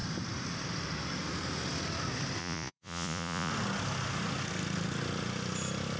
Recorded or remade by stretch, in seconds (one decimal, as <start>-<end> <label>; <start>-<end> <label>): 0.0-2.4 recorded; 2.4-3.5 remade; 3.5-6.0 recorded